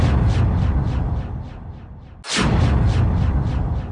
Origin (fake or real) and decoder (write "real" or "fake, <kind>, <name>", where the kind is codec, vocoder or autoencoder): real